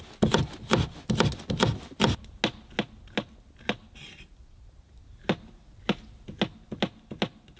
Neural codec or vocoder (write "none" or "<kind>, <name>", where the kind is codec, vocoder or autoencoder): none